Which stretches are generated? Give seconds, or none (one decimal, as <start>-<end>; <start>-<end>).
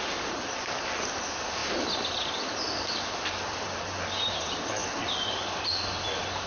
1.6-3.9; 4.8-5.4